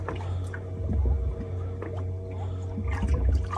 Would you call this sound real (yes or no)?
yes